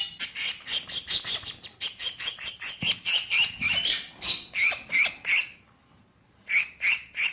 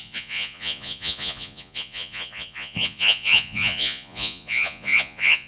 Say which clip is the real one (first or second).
first